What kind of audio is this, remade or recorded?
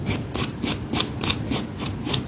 recorded